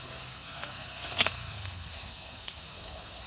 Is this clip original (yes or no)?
no